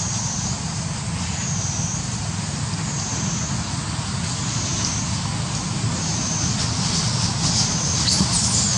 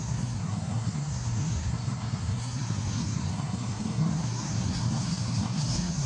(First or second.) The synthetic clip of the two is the second